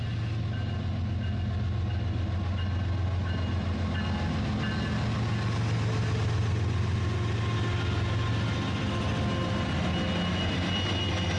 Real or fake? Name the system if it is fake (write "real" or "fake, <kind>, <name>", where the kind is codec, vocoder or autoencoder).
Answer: real